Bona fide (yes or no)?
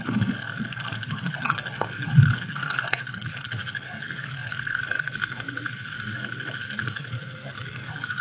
no